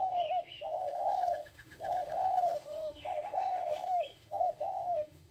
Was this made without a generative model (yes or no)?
no